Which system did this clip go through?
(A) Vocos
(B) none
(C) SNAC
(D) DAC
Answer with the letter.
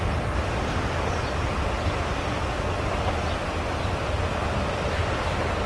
B